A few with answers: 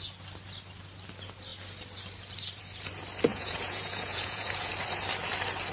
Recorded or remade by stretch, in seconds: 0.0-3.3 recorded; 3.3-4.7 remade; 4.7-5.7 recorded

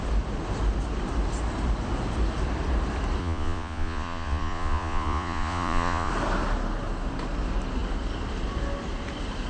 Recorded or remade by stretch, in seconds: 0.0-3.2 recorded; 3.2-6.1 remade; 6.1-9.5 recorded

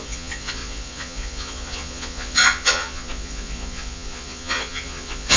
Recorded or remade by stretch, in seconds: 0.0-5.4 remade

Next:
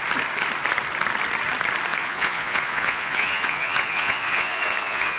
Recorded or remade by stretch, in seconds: 0.0-1.9 recorded; 1.9-5.2 remade

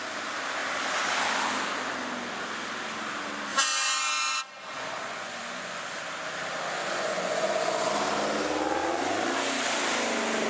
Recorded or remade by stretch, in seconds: 0.0-3.5 recorded; 3.5-6.0 remade; 6.0-6.8 recorded; 6.8-7.9 remade; 7.9-10.5 recorded